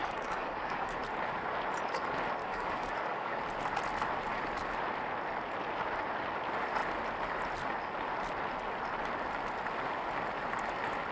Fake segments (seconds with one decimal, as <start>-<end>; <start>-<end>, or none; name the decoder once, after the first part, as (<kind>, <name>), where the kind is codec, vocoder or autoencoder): 0.0-1.0 (codec, DAC); 2.4-3.4